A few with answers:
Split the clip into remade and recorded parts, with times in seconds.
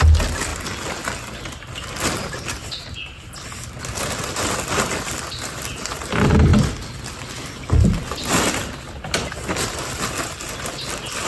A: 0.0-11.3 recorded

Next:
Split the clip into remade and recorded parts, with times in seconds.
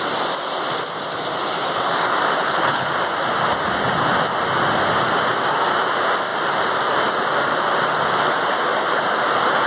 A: 0.0-2.4 recorded; 2.4-2.9 remade; 2.9-9.7 recorded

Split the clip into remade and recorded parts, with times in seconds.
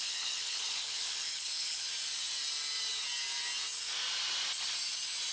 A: 0.0-1.9 remade; 1.9-5.3 recorded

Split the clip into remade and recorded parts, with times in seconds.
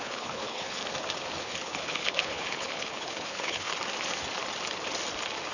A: 0.0-0.8 remade; 0.8-1.4 recorded; 1.4-3.7 remade; 3.7-5.5 recorded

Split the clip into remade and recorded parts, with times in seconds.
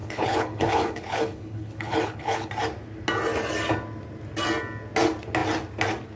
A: 0.0-2.5 remade; 2.5-6.2 recorded